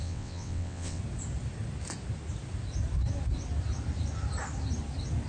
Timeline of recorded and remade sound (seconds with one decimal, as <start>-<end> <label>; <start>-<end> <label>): 0.0-1.0 remade; 1.0-5.3 recorded